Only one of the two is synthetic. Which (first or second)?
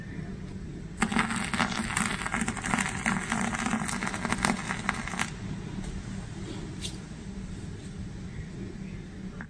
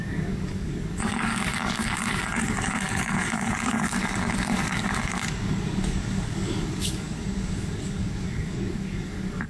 second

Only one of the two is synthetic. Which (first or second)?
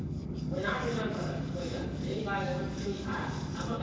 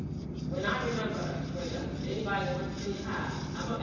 first